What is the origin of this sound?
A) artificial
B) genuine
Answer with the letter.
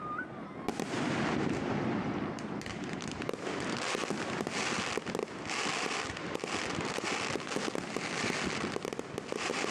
B